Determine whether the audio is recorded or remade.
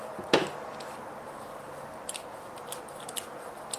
recorded